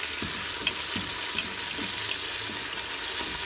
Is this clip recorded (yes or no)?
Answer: yes